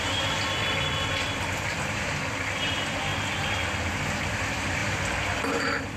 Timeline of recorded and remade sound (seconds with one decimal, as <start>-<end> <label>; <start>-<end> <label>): 0.0-3.1 remade; 3.1-4.3 recorded; 4.3-4.8 remade; 4.8-5.6 recorded; 5.6-6.0 remade